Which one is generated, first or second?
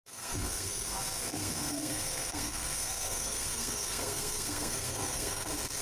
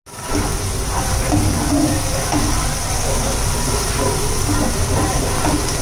first